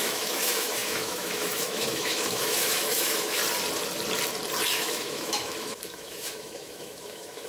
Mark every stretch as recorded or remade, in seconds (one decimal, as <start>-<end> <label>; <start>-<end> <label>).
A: 0.0-3.4 remade; 3.4-4.7 recorded; 4.7-7.5 remade